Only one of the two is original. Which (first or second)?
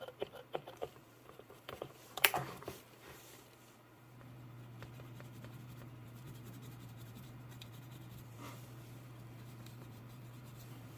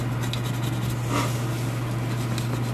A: second